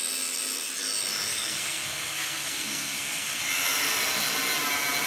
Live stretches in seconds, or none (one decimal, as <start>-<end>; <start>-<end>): 0.0-1.3; 3.4-5.1